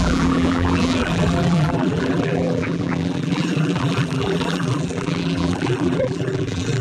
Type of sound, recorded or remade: remade